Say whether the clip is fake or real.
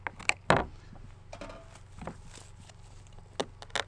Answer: real